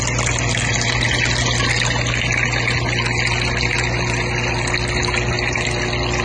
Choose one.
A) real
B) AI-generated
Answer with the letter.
A